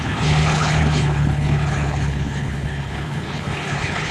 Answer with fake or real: fake